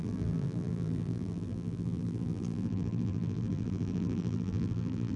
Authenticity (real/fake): fake